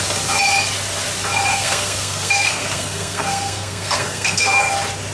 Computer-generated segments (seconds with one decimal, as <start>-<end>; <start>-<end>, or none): 1.5-4.6